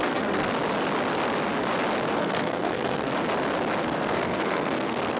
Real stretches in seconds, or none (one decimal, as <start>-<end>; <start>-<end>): 0.5-2.1; 3.1-3.8